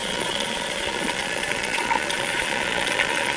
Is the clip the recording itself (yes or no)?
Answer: no